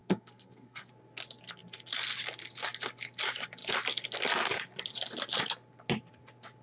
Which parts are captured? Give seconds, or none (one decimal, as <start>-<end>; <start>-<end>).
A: 0.9-6.6